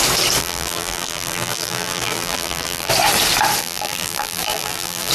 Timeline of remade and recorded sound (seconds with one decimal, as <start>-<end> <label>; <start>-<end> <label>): 0.0-0.4 recorded; 0.4-2.9 remade; 2.9-3.6 recorded; 3.6-5.1 remade